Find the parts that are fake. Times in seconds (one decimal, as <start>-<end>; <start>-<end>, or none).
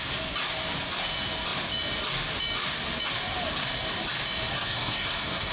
4.5-5.5